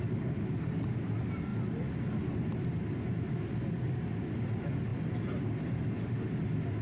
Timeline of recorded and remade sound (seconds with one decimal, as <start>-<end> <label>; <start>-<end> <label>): 0.0-6.8 recorded